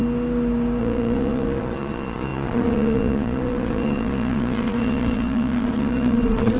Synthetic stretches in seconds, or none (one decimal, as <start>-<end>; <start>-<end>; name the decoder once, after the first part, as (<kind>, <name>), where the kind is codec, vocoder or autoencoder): 0.8-6.6 (vocoder, Vocos)